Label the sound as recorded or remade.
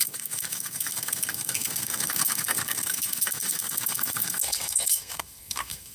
remade